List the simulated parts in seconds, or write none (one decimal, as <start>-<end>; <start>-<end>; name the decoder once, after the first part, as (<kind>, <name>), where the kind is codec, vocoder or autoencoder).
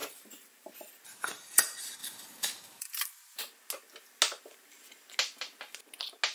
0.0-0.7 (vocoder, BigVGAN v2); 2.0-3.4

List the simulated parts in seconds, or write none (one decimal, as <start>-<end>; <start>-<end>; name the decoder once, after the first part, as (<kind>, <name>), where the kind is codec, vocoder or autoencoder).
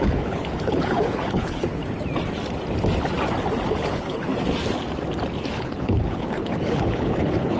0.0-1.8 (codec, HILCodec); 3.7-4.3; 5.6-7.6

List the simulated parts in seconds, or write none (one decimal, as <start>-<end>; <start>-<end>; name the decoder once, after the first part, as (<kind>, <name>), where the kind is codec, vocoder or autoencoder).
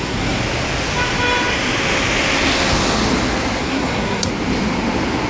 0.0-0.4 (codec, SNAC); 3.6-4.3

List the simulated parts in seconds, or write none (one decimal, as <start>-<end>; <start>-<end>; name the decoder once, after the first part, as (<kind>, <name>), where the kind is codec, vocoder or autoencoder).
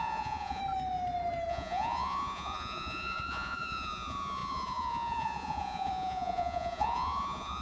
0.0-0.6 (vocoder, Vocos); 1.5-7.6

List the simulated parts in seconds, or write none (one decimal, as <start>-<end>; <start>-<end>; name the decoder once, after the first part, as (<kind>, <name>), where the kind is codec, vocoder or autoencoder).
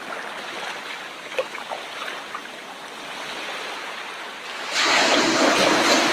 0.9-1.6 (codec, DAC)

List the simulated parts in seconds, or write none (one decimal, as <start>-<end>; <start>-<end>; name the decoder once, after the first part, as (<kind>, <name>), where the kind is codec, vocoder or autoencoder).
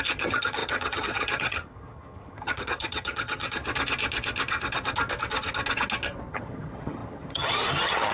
0.0-3.6 (vocoder, HiFi-GAN); 6.3-8.1